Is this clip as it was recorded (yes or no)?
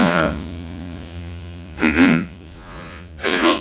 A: no